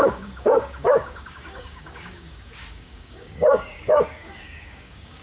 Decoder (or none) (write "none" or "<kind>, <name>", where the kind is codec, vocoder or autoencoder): codec, DAC